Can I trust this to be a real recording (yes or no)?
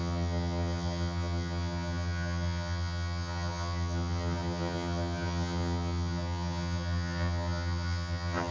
no